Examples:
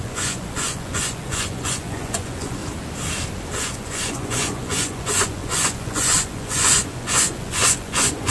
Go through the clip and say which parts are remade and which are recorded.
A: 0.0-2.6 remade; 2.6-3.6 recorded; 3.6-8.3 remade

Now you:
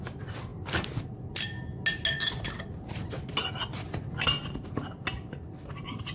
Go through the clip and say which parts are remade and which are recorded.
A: 0.0-6.1 recorded

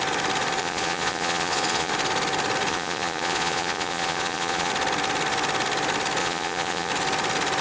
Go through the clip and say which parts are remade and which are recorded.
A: 0.0-0.6 recorded; 0.6-1.9 remade; 1.9-2.7 recorded; 2.7-4.7 remade; 4.7-6.2 recorded; 6.2-6.9 remade; 6.9-7.6 recorded

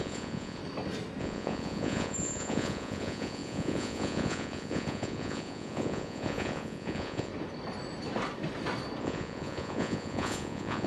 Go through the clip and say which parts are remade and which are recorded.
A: 0.0-0.6 remade; 0.6-1.2 recorded; 1.2-7.3 remade; 7.3-9.0 recorded; 9.0-10.9 remade

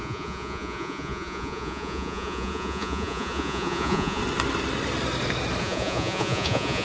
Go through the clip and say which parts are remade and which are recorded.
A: 0.0-4.2 remade; 4.2-5.6 recorded; 5.6-6.8 remade

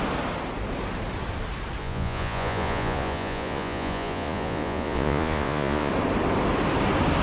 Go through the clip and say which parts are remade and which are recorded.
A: 0.0-1.8 recorded; 1.8-5.9 remade; 5.9-7.2 recorded

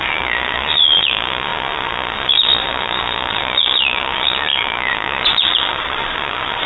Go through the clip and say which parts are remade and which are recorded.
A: 0.0-6.7 remade

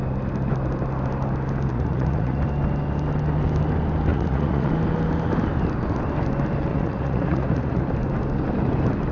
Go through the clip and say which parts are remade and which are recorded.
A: 0.0-1.7 recorded; 1.7-2.4 remade; 2.4-4.1 recorded; 4.1-4.7 remade; 4.7-6.7 recorded; 6.7-7.8 remade; 7.8-9.1 recorded